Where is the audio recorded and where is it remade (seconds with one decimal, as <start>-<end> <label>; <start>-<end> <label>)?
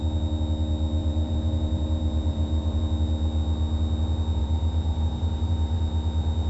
0.0-1.0 recorded; 1.0-2.8 remade; 2.8-4.4 recorded; 4.4-5.8 remade; 5.8-6.5 recorded